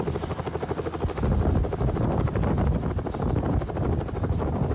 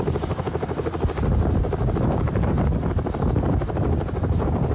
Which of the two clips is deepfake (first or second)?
second